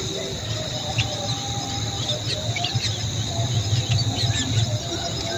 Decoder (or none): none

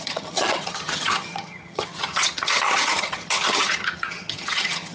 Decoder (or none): vocoder, HiFi-GAN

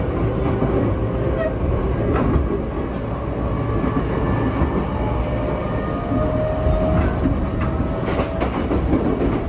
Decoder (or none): none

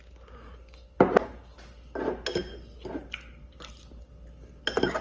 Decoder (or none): none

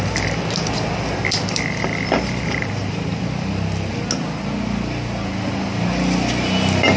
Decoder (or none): none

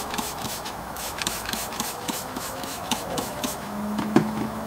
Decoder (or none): autoencoder, DAC-VAE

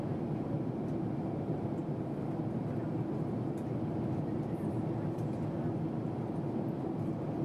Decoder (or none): none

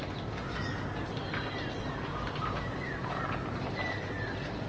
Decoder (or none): none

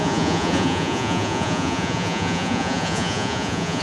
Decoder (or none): vocoder, Vocos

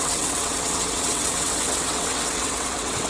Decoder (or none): vocoder, WaveNeXt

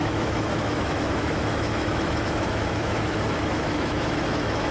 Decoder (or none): autoencoder, DAC-VAE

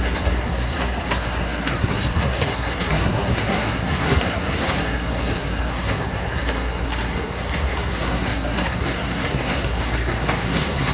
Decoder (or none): codec, SNAC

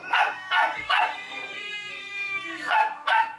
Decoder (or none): codec, SNAC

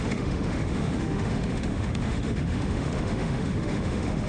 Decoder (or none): autoencoder, DAC-VAE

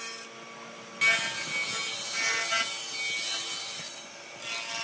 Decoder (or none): none